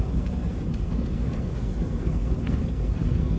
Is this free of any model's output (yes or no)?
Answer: no